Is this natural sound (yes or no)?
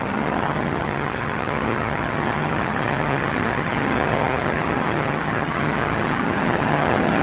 no